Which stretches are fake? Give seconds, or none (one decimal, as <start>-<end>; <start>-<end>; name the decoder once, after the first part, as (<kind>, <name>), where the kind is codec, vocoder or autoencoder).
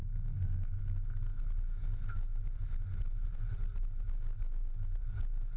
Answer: 0.0-0.8 (codec, SNAC)